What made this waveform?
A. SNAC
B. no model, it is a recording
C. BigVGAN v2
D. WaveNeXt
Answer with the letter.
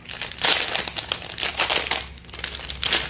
B